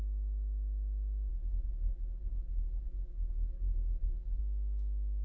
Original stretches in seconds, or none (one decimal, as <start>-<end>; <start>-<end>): 0.0-1.3; 4.4-5.2